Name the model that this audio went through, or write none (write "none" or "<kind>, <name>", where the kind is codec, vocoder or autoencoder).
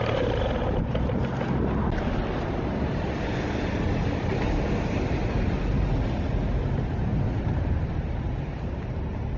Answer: none